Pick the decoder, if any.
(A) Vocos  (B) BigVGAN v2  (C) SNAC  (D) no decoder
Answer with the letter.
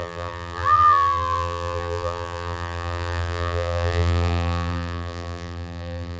B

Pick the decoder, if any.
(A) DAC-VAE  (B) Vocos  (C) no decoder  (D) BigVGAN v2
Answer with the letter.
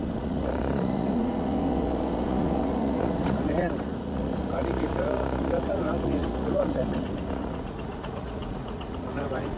B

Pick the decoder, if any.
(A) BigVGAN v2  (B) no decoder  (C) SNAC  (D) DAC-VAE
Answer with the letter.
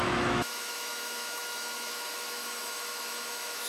D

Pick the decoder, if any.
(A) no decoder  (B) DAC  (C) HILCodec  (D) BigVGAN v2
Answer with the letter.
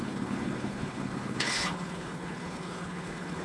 C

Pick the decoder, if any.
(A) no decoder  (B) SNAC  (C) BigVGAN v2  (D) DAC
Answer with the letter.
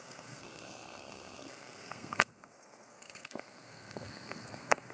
B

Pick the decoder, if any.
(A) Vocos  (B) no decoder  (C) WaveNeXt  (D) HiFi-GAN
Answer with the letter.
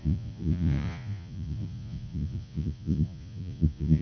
A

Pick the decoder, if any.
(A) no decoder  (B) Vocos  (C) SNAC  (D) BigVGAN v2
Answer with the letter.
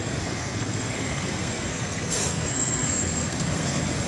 C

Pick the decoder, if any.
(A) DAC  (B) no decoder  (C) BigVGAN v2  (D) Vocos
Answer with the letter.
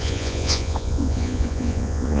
D